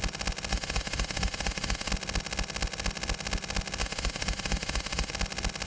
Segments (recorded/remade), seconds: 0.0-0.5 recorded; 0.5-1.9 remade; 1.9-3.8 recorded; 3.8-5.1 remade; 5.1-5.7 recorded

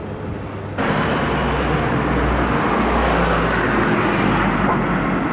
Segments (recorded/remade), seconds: 0.0-5.3 recorded

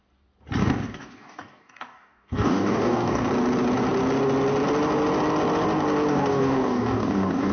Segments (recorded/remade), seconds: 0.0-0.6 recorded; 0.6-3.3 remade; 3.3-6.1 recorded; 6.1-7.5 remade